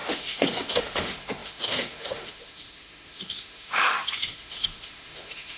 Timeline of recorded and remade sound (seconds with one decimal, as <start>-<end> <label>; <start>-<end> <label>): 0.0-5.6 remade